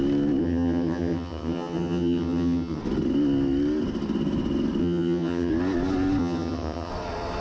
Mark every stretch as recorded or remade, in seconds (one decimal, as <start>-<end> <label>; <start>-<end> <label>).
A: 0.0-0.4 recorded; 0.4-2.8 remade; 2.8-4.8 recorded; 4.8-5.5 remade; 5.5-6.2 recorded; 6.2-6.9 remade; 6.9-7.4 recorded